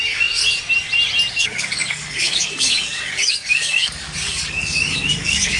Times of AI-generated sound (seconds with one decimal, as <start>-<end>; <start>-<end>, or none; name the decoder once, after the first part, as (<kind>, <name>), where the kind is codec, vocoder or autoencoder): 0.0-0.4 (codec, DAC); 1.3-5.6